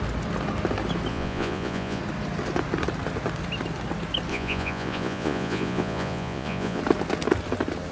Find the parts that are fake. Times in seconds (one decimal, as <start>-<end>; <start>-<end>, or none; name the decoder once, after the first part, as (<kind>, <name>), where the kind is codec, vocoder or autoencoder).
1.1-2.0 (vocoder, Vocos); 4.3-6.8